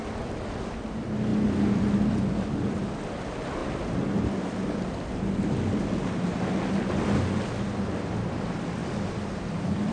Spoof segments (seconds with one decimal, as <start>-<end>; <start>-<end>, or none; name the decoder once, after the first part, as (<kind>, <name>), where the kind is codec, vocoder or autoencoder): none

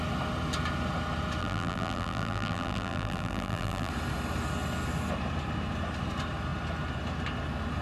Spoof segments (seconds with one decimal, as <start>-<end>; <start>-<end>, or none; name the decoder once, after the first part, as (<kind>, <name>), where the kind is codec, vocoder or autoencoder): 1.4-3.9 (vocoder, BigVGAN v2)

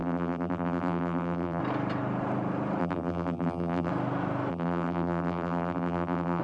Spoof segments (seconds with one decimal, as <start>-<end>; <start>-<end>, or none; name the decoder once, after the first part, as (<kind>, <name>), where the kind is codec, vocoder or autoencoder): 0.0-1.6 (vocoder, BigVGAN v2); 2.8-3.9; 4.5-6.4

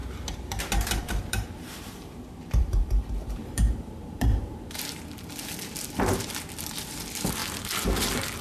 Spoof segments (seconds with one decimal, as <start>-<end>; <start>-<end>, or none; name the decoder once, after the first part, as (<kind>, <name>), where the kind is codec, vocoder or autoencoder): 0.0-5.0 (vocoder, BigVGAN v2)